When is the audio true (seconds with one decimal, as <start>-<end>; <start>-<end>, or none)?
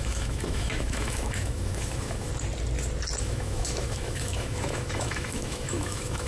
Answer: 2.3-3.2